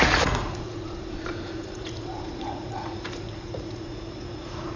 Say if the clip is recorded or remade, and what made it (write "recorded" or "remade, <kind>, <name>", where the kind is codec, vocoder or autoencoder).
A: remade, vocoder, Vocos